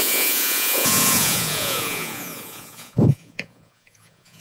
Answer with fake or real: fake